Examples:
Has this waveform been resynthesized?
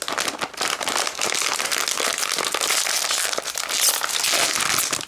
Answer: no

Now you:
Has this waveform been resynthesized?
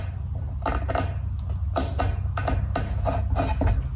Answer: no